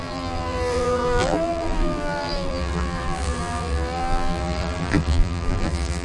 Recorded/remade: remade